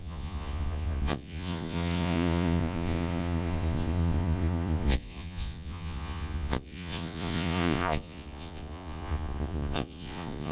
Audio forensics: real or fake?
fake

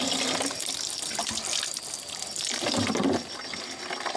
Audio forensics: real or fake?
real